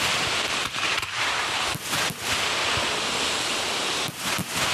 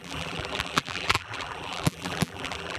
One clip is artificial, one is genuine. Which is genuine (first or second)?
first